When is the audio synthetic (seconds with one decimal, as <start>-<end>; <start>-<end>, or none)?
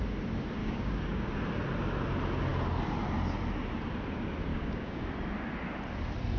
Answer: 0.6-1.4; 4.5-5.0